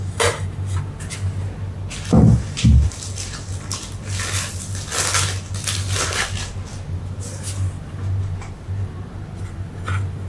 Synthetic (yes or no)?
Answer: no